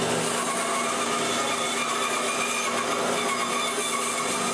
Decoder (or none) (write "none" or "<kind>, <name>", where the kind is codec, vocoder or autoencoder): none